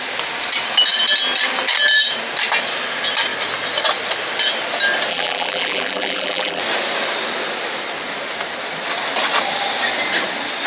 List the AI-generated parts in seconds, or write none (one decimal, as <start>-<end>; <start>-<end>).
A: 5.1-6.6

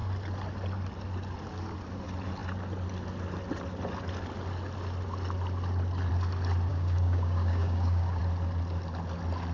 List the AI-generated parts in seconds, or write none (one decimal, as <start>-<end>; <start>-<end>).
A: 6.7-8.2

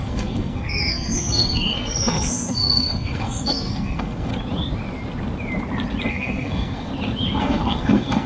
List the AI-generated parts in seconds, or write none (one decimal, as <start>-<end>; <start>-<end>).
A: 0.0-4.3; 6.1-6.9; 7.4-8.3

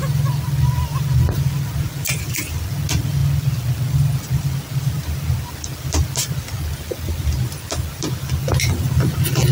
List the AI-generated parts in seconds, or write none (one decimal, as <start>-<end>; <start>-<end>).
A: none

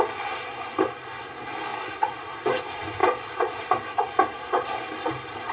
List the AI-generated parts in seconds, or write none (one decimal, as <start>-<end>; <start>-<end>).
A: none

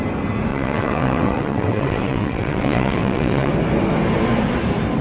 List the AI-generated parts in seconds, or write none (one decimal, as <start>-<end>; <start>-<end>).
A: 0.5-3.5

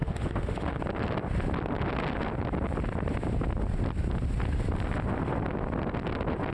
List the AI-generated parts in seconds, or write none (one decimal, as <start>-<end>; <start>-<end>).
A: 0.0-0.8

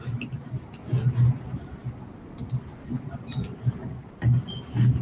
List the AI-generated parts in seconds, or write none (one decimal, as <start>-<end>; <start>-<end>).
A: none